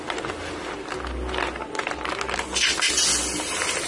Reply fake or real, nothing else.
real